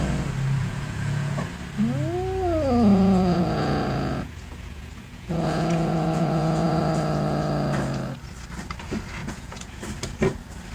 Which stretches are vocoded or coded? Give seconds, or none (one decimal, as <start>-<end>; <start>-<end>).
0.6-1.4; 2.9-6.8; 9.2-9.8